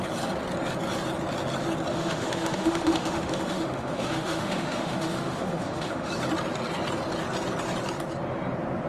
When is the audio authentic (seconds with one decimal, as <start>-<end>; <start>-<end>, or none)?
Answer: 0.0-1.9; 6.1-8.9